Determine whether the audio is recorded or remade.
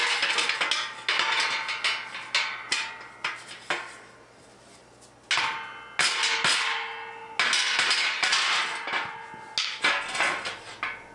recorded